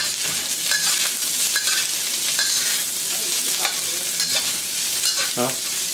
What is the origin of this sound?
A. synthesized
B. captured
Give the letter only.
B